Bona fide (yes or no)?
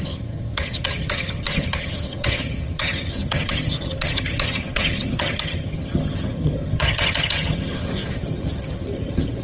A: no